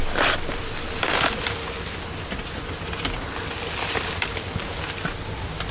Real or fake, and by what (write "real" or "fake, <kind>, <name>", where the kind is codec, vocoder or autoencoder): real